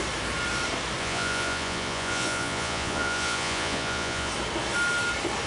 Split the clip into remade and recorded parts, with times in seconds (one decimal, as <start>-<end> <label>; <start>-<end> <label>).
0.0-1.0 recorded; 1.0-4.3 remade; 4.3-5.5 recorded